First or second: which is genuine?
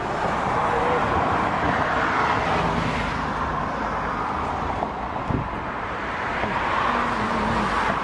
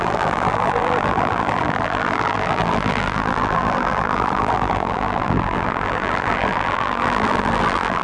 first